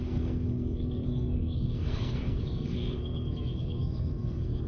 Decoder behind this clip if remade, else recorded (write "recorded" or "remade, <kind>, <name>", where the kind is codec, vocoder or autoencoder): remade, codec, SNAC